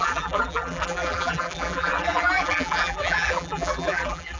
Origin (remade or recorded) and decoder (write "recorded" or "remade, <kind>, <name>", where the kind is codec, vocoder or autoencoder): remade, vocoder, BigVGAN v2